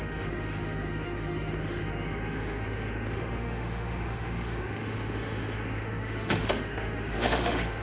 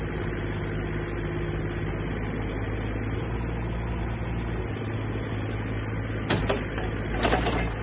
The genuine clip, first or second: second